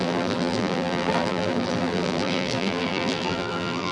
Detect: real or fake fake